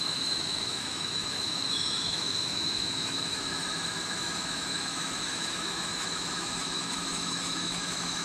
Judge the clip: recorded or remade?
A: remade